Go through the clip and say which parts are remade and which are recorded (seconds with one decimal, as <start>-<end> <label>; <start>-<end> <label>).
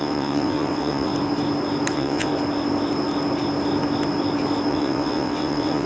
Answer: 0.0-1.1 remade; 1.1-1.9 recorded; 1.9-2.3 remade; 2.3-4.7 recorded; 4.7-5.9 remade